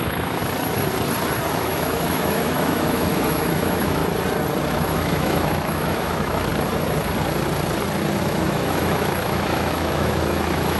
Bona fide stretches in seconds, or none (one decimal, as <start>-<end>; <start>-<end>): 0.4-1.5; 4.0-4.7; 6.5-8.2